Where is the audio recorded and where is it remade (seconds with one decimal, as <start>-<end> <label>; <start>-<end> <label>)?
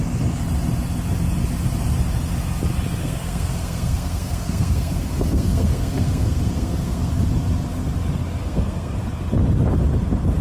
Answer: 0.0-3.0 recorded; 3.0-7.1 remade; 7.1-8.4 recorded; 8.4-9.0 remade; 9.0-10.4 recorded